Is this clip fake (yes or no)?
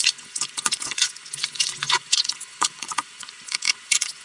yes